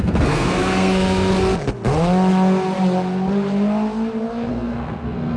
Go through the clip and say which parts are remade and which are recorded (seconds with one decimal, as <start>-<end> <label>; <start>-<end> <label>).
0.0-1.3 remade; 1.3-4.5 recorded; 4.5-5.4 remade